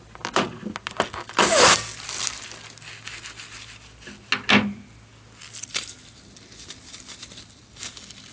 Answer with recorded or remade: recorded